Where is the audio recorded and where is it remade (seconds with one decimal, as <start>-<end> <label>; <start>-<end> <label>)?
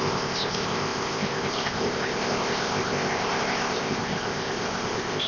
0.0-5.3 remade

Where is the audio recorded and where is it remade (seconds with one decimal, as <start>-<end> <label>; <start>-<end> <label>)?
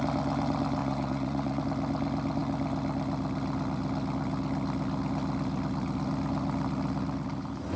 0.0-0.8 recorded; 0.8-1.6 remade; 1.6-7.8 recorded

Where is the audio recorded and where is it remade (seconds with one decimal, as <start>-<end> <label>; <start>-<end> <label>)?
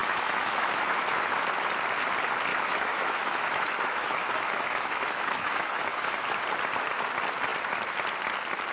0.0-1.4 remade; 1.4-2.5 recorded; 2.5-6.4 remade; 6.4-8.7 recorded